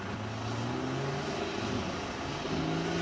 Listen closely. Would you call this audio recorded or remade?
recorded